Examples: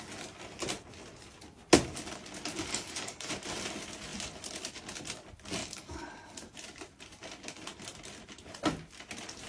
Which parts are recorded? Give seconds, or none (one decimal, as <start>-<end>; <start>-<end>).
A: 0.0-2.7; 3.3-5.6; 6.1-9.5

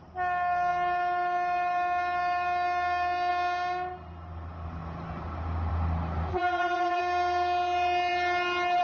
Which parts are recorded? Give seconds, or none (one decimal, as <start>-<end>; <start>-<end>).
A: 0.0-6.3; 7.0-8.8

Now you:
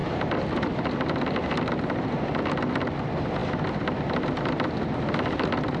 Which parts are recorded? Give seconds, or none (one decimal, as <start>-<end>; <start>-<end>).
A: 0.0-5.8

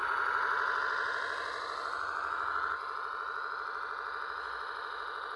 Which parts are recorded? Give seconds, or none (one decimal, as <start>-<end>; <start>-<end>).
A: 0.0-5.4

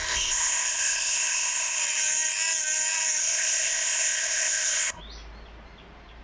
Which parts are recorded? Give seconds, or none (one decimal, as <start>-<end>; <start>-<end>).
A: 1.8-3.2; 5.0-6.2

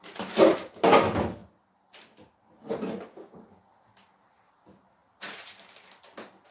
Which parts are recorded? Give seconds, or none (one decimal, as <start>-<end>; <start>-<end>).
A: 0.0-6.5

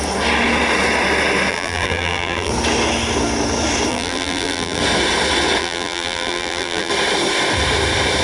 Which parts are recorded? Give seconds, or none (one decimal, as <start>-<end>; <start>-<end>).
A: 0.0-1.5; 2.5-3.9; 4.8-5.6; 6.9-8.2

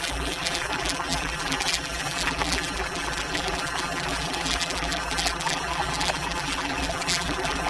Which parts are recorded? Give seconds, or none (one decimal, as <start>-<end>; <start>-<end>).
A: none